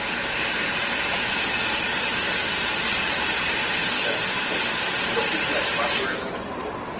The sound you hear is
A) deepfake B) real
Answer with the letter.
A